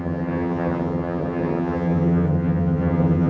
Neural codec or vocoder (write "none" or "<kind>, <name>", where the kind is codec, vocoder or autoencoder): vocoder, HiFi-GAN